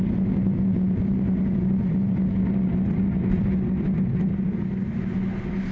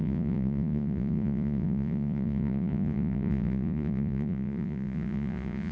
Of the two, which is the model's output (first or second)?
second